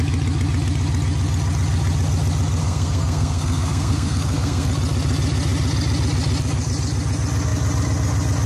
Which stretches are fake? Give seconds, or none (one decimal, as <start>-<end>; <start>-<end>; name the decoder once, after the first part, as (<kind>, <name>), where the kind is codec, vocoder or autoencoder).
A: 2.6-4.7 (codec, SNAC)